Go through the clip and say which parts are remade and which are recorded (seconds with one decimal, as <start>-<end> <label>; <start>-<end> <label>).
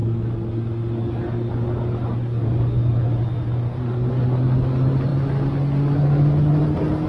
0.0-7.1 recorded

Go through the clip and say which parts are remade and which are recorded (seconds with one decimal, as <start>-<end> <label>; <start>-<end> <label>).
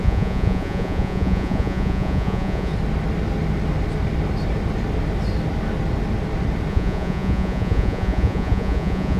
0.0-2.7 remade; 2.7-6.7 recorded; 6.7-9.2 remade